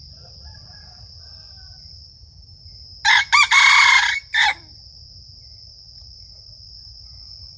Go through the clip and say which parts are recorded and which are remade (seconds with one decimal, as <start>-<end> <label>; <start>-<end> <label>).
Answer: 0.0-2.5 remade; 2.5-4.0 recorded; 4.0-7.6 remade

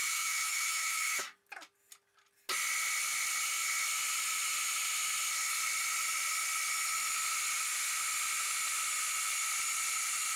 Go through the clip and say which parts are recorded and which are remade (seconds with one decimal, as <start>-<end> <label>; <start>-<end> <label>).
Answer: 0.0-1.2 remade; 1.2-10.4 recorded